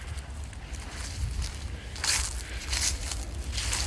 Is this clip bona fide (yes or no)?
yes